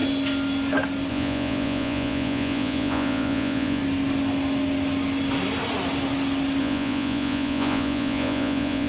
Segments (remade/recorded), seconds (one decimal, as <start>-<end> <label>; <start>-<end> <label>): 0.0-1.1 recorded; 1.1-3.8 remade; 3.8-6.6 recorded; 6.6-8.9 remade